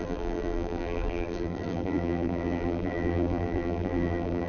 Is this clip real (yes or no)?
no